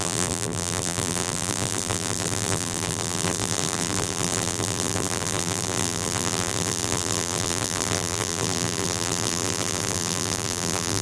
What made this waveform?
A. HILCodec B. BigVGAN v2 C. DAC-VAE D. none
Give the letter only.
B